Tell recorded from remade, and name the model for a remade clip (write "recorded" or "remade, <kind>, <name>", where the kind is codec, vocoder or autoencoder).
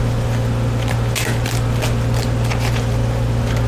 recorded